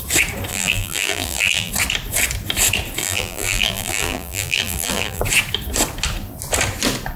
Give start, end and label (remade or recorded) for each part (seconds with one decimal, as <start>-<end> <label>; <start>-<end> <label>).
0.0-0.5 recorded; 0.5-1.7 remade; 1.7-3.0 recorded; 3.0-5.2 remade; 5.2-7.2 recorded